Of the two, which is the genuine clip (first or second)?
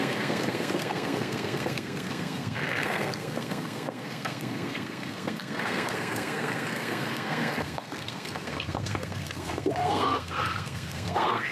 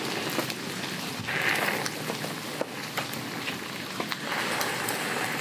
second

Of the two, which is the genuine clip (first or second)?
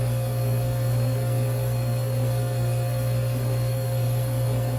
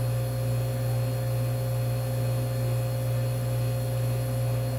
second